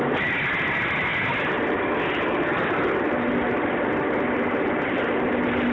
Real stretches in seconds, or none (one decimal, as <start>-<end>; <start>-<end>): 0.0-5.7